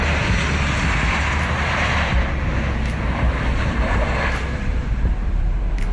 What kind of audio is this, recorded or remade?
remade